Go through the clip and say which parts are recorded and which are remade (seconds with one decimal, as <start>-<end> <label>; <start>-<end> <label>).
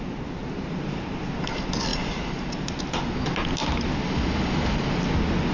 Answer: 0.0-0.4 recorded; 0.4-1.2 remade; 1.2-5.5 recorded